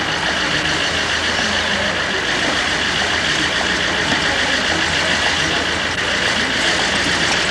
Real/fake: real